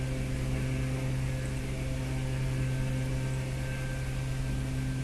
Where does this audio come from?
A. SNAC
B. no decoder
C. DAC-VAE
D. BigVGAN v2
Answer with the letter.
D